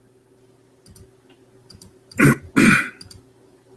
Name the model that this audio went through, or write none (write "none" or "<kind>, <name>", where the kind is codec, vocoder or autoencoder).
none